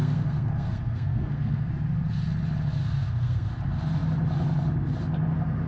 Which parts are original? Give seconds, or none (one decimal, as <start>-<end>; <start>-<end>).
1.7-2.8; 3.5-5.7